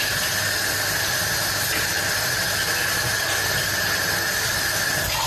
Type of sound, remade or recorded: recorded